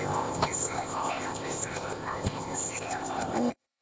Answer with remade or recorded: remade